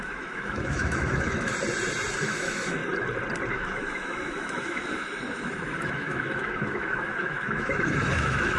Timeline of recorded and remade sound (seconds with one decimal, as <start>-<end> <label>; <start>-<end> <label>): 0.0-1.5 remade; 1.5-2.2 recorded; 2.2-2.8 remade; 2.8-3.5 recorded; 3.5-8.6 remade